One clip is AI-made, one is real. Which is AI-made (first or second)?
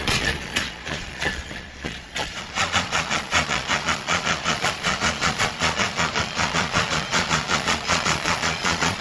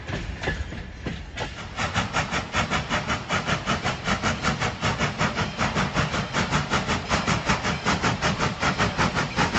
first